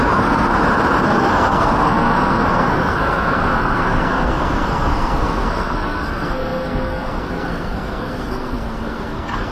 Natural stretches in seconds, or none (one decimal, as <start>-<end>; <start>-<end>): 0.5-1.0